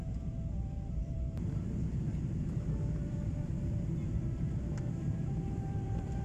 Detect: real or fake fake